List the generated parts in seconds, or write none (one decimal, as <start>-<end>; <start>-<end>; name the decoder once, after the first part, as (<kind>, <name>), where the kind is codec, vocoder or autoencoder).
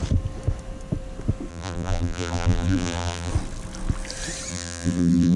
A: 1.5-3.3 (vocoder, BigVGAN v2); 4.5-5.4